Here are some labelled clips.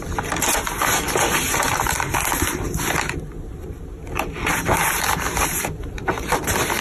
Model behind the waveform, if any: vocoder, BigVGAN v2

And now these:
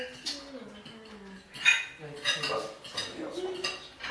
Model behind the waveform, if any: none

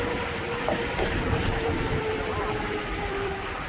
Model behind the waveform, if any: vocoder, BigVGAN v2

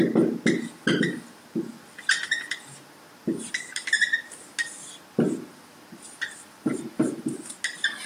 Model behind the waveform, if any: none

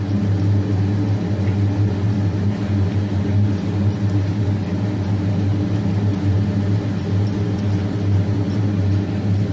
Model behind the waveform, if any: none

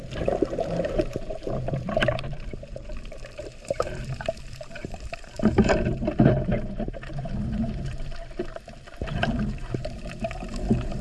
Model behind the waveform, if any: vocoder, BigVGAN v2